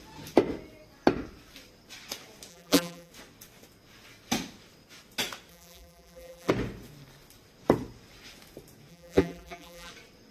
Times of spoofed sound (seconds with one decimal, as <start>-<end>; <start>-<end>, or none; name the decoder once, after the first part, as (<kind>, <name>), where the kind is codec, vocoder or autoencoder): 2.5-3.1 (vocoder, BigVGAN v2); 5.5-6.5; 8.9-9.9